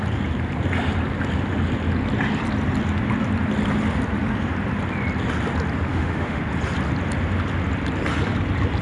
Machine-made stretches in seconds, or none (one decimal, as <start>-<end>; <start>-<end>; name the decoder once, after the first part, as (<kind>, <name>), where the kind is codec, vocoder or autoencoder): 5.9-6.4 (autoencoder, DAC-VAE)